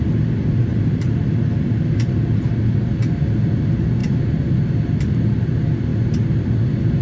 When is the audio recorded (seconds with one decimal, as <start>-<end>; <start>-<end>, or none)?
0.0-0.7; 1.3-7.0